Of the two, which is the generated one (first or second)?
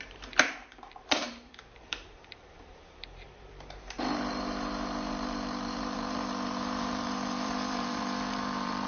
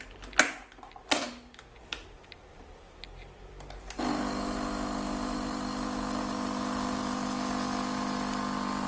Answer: first